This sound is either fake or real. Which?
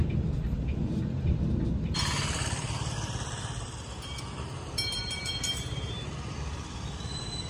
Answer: fake